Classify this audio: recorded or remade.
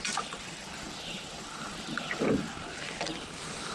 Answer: recorded